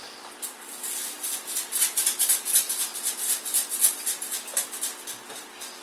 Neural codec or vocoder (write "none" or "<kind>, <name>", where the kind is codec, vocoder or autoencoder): none